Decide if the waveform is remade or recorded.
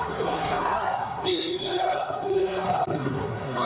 remade